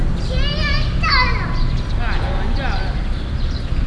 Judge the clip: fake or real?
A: real